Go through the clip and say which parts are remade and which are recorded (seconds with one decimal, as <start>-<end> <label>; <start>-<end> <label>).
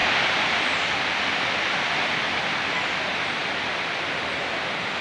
0.0-5.0 recorded